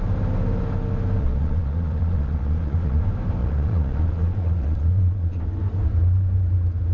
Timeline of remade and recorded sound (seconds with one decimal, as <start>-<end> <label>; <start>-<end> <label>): 0.0-1.2 recorded; 1.2-3.0 remade; 3.0-3.4 recorded; 3.4-5.4 remade; 5.4-6.9 recorded